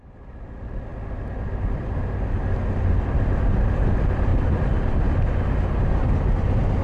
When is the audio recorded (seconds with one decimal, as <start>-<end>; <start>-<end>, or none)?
0.0-6.8